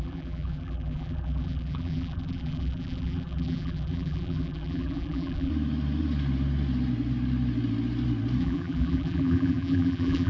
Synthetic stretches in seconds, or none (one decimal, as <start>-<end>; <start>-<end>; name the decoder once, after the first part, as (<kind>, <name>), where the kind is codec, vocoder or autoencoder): 0.0-5.5 (vocoder, BigVGAN v2); 8.4-10.3